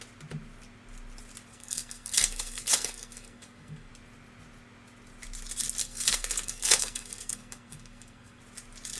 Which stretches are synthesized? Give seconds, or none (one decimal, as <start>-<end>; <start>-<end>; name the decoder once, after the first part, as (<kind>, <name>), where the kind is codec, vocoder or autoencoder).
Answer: 1.5-3.9 (codec, SNAC); 5.8-8.4